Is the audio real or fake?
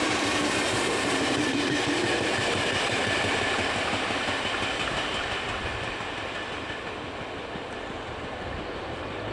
fake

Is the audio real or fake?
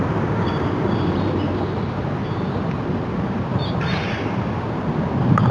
fake